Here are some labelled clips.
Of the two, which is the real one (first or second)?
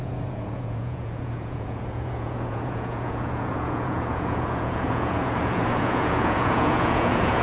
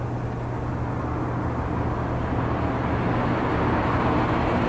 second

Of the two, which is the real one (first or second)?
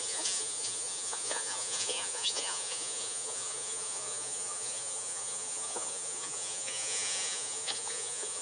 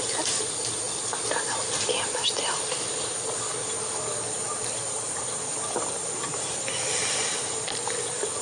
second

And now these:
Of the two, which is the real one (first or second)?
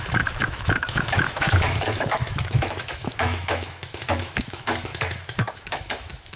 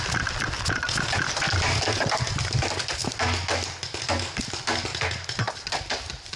second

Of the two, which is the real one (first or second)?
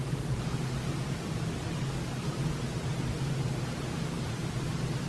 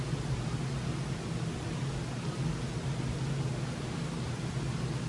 second